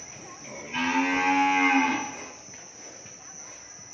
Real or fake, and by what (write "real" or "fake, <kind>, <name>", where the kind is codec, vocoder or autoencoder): real